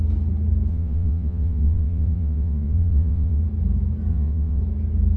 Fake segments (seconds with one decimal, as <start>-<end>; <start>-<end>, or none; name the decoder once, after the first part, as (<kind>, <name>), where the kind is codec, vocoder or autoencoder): 0.7-3.4 (vocoder, WaveNeXt); 4.1-4.6